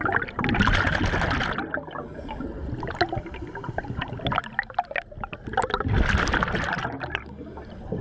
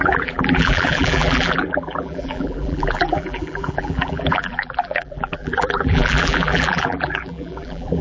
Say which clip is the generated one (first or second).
second